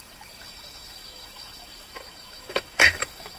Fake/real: fake